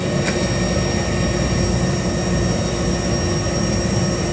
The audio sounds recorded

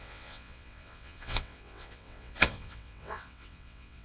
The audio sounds remade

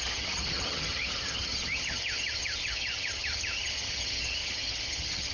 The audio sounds remade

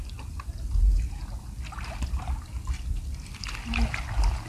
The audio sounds recorded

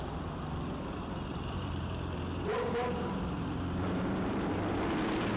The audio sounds remade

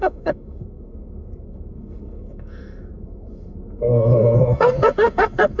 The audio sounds remade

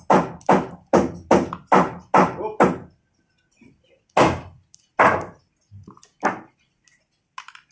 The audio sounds recorded